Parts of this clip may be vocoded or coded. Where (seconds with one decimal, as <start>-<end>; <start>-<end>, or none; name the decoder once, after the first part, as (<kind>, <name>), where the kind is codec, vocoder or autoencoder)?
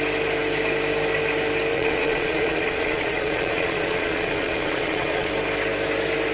1.7-5.3 (vocoder, Vocos)